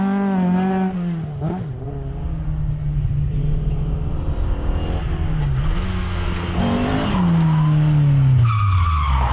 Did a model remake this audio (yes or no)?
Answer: no